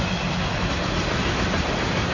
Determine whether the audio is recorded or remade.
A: recorded